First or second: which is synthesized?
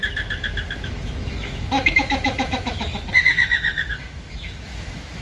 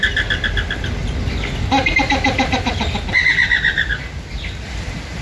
first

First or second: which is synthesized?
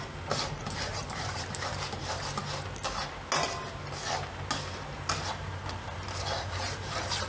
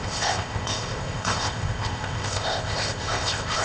second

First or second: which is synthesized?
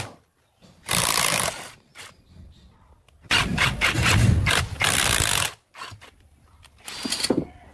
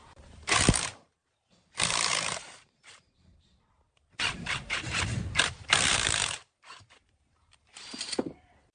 second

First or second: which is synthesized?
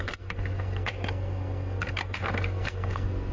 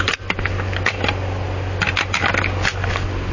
first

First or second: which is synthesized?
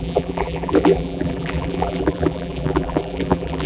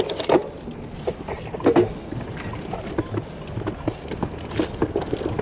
first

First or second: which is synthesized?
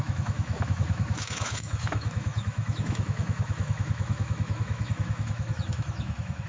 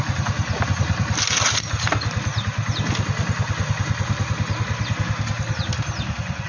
first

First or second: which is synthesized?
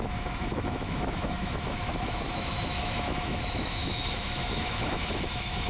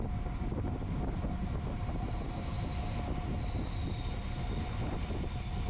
first